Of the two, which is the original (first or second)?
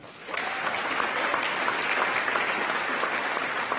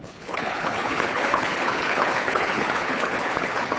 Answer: first